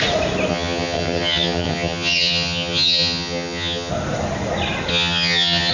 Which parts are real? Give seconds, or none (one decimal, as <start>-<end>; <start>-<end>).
0.0-0.5; 3.9-4.9